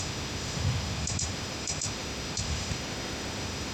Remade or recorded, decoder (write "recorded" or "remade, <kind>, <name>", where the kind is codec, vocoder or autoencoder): remade, autoencoder, DAC-VAE